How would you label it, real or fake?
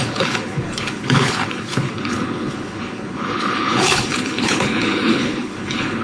fake